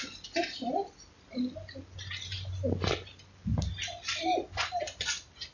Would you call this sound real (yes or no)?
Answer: yes